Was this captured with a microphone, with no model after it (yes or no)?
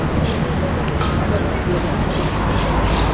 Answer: yes